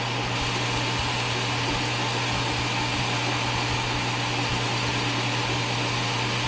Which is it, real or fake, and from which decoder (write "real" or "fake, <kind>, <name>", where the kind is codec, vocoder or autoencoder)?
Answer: real